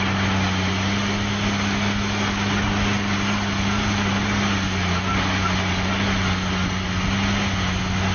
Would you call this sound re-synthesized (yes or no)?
no